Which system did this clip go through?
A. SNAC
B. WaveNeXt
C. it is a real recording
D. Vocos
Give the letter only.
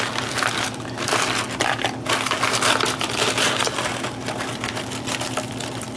C